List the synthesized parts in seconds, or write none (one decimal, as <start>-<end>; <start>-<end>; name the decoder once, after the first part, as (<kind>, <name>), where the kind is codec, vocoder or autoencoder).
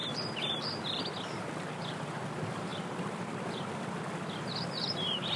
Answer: 0.0-2.7 (vocoder, BigVGAN v2); 4.6-5.4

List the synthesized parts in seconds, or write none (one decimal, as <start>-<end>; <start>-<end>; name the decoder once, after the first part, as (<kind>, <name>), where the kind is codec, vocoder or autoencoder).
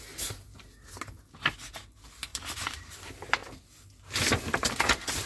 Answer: 2.3-3.0 (vocoder, BigVGAN v2)